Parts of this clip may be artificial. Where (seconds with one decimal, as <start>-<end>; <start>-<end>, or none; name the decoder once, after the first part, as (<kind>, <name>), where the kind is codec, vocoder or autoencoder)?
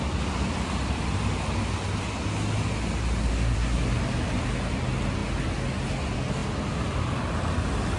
3.3-3.8 (codec, SNAC)